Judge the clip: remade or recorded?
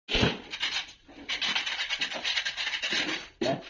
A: recorded